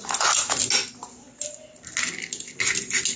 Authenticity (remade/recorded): recorded